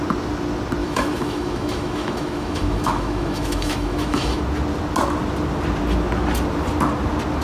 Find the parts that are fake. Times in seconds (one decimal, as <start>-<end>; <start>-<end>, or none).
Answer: 0.8-4.4